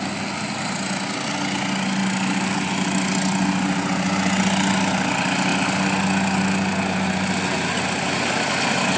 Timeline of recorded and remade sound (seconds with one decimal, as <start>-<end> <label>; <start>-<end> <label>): 0.0-9.0 recorded

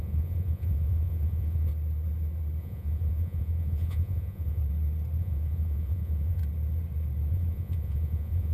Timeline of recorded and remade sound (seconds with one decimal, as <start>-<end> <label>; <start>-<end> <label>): 0.0-1.7 remade; 1.7-2.6 recorded; 2.6-4.6 remade; 4.6-5.2 recorded; 5.2-6.4 remade; 6.4-7.3 recorded; 7.3-8.5 remade

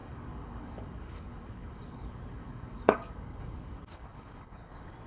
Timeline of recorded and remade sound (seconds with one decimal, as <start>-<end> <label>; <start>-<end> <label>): 0.0-5.1 remade

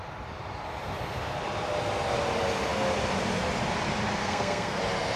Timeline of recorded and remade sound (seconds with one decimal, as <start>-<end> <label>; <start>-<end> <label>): 0.0-4.2 recorded; 4.2-4.8 remade; 4.8-5.2 recorded

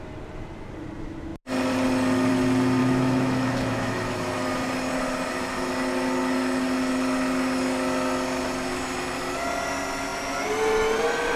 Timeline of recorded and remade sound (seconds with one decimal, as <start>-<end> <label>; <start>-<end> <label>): 0.0-2.8 recorded; 2.8-4.3 remade; 4.3-11.4 recorded

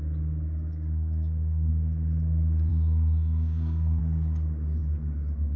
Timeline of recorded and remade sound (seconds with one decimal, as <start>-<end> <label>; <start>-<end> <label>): 0.0-0.7 recorded; 0.7-1.7 remade; 1.7-2.7 recorded; 2.7-4.0 remade; 4.0-5.6 recorded